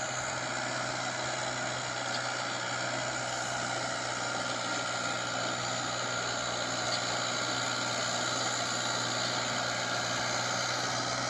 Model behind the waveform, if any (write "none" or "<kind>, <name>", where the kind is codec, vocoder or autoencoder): none